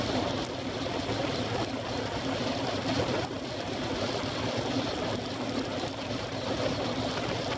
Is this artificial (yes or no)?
no